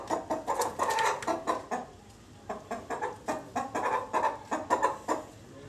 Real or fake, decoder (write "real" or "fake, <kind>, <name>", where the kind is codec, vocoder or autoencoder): real